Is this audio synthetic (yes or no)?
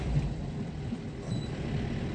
yes